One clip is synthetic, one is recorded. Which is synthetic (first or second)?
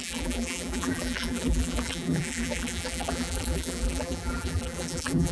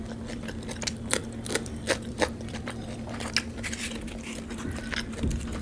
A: first